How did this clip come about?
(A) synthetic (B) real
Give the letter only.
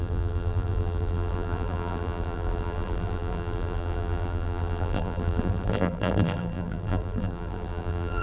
A